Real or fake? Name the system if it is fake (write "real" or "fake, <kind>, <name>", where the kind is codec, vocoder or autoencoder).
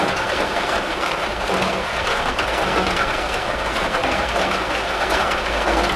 fake, codec, SNAC